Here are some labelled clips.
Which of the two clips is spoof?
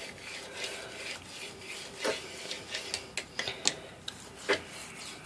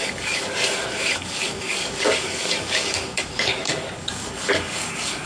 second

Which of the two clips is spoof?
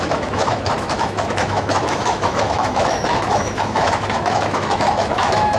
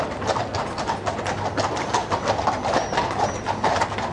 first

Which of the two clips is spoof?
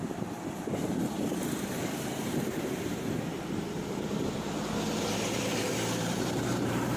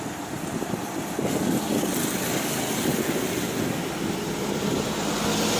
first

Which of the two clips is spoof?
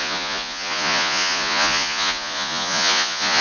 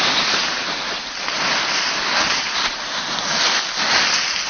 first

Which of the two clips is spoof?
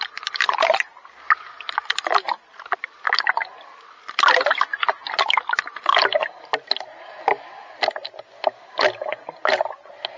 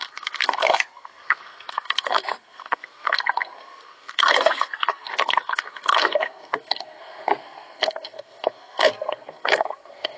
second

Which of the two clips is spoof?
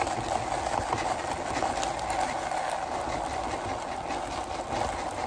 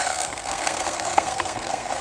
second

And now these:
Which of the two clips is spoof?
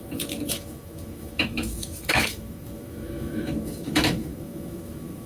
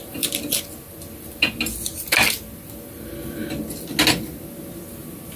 first